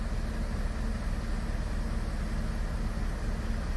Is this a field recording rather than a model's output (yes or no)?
yes